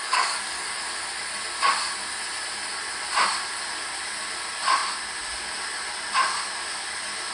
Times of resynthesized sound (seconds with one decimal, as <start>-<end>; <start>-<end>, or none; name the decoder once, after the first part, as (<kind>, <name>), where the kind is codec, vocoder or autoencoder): 0.0-0.8 (codec, DAC)